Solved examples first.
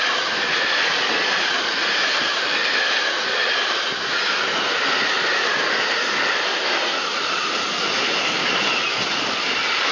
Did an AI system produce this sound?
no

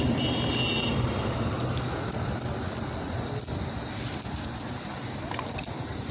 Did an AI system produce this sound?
no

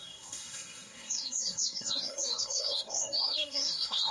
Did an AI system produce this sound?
yes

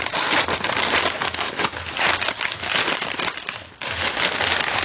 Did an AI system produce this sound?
no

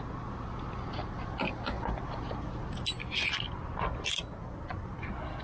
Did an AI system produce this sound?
no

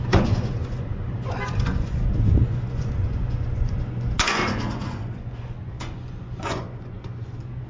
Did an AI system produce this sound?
yes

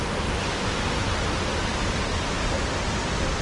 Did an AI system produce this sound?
no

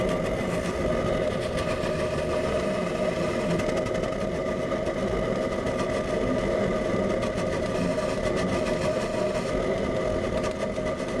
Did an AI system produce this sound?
no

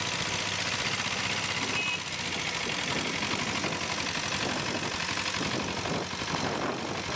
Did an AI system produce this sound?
no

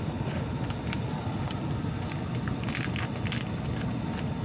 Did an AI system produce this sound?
no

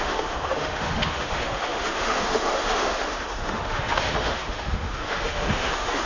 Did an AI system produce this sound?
yes